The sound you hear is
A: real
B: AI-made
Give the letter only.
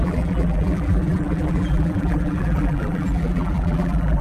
B